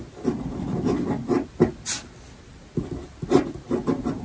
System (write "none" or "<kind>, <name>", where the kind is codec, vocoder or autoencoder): none